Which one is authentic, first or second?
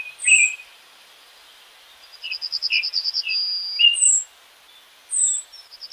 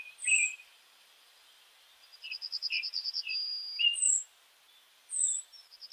first